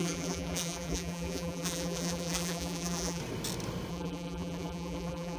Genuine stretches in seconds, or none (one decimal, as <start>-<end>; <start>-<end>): 3.2-3.9